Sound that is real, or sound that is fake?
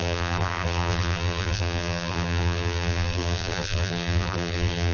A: fake